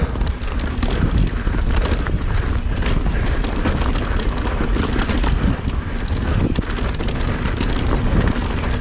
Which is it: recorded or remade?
recorded